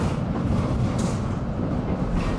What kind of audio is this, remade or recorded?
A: recorded